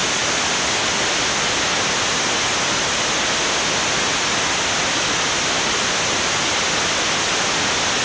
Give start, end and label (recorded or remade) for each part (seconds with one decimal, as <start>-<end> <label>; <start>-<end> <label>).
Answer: 0.0-8.0 recorded